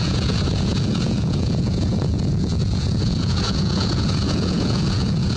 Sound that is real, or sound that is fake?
fake